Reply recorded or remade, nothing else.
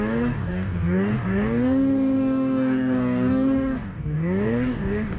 remade